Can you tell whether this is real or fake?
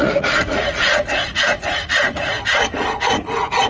fake